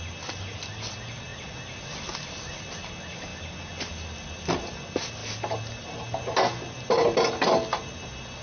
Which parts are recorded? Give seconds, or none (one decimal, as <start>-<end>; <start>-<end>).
0.0-8.4

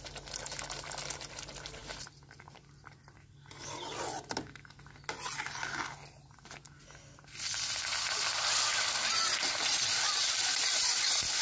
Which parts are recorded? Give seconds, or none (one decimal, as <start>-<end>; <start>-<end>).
0.0-11.4

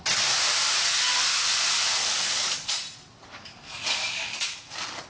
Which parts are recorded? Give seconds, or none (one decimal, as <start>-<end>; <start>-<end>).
0.0-2.0; 2.7-3.4; 4.5-5.1

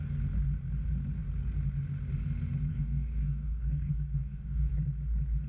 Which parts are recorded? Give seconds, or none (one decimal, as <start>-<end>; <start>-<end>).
0.0-2.7; 4.7-5.5

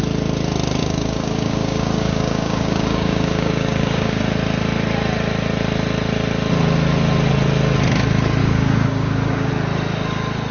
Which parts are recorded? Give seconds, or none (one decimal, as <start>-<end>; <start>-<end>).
0.0-0.8; 4.2-8.4; 9.5-10.5